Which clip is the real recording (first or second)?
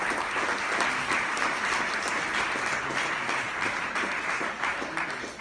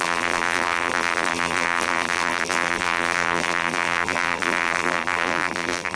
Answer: first